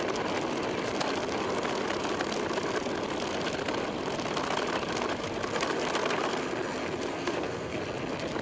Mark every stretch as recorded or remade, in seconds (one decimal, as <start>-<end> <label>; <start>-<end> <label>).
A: 0.0-7.1 recorded; 7.1-7.8 remade; 7.8-8.4 recorded